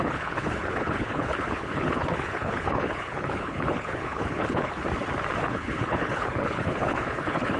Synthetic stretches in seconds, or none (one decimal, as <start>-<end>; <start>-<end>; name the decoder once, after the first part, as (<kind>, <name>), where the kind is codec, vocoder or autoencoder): 0.0-4.8 (codec, HILCodec); 5.4-7.6